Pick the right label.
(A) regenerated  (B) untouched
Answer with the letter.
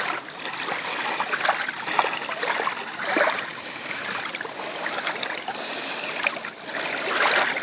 B